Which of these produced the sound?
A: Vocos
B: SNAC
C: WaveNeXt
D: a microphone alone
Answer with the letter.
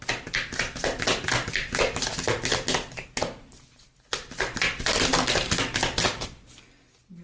D